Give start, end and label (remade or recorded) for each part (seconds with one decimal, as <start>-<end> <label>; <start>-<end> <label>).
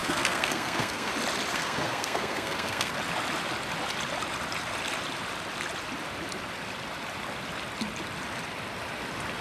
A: 0.0-1.1 remade; 1.1-1.5 recorded; 1.5-2.9 remade; 2.9-9.4 recorded